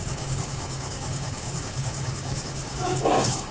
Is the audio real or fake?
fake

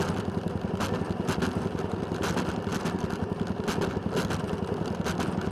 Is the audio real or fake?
real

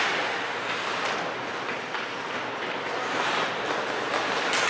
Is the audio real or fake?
real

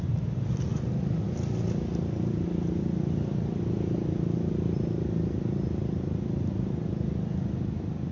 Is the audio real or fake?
real